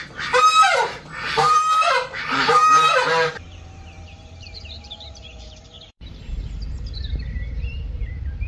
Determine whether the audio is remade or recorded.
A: remade